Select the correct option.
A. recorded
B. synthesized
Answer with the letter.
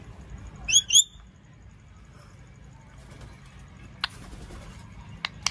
A